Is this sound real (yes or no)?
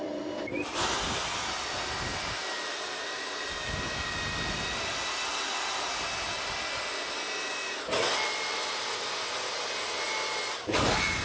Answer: yes